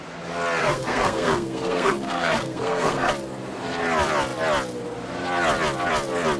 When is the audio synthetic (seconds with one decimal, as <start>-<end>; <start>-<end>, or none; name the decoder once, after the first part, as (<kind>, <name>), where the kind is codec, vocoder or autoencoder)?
0.6-3.1 (codec, SNAC)